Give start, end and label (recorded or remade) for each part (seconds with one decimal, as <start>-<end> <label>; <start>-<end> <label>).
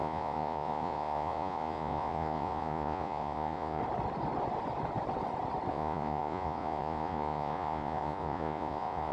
0.0-3.8 remade; 3.8-5.7 recorded; 5.7-9.1 remade